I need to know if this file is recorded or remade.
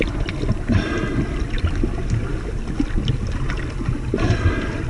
recorded